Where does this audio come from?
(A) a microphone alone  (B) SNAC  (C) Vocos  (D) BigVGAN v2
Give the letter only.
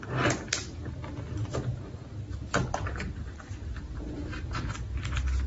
A